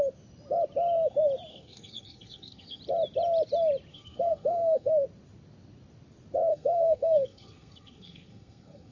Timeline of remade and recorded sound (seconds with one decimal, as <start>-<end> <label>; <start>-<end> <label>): 0.0-1.5 recorded; 1.5-2.8 remade; 2.8-3.9 recorded; 3.9-4.9 remade; 4.9-6.5 recorded; 6.5-8.9 remade